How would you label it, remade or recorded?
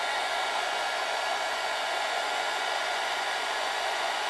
remade